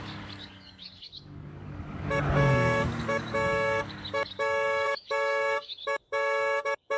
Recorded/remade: remade